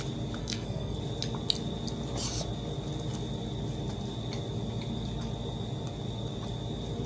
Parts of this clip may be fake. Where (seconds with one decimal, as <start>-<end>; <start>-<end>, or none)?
0.4-1.0